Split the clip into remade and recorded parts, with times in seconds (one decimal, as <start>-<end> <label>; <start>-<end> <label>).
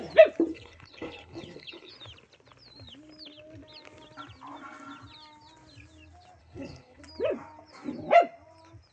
0.0-0.5 recorded; 0.5-1.9 remade; 1.9-6.4 recorded; 6.4-7.0 remade; 7.0-8.9 recorded